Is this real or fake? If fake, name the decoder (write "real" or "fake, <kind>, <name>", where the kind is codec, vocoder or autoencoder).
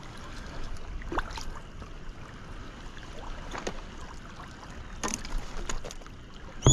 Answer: real